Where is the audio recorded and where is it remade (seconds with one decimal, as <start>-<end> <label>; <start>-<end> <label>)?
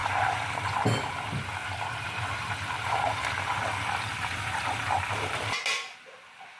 0.0-0.8 remade; 0.8-1.6 recorded; 1.6-5.5 remade; 5.5-6.6 recorded